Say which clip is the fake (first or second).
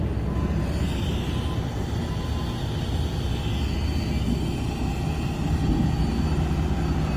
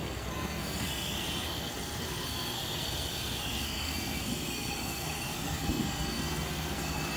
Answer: second